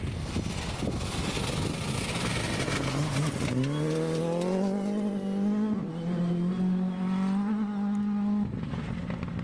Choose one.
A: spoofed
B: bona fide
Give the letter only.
B